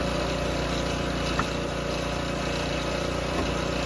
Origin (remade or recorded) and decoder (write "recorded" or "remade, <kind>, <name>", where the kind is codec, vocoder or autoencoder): recorded